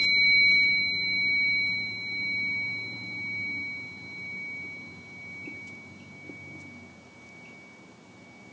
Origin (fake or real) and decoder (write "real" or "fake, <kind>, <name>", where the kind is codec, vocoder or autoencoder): real